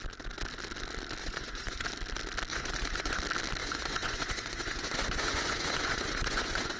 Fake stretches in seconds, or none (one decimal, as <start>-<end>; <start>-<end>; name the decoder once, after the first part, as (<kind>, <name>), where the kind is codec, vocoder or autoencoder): 1.2-1.9 (vocoder, Vocos); 2.5-3.2; 3.6-6.8